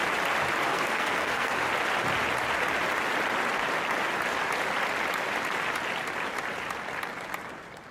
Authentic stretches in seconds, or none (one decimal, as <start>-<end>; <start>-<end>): 0.0-0.6; 1.6-7.9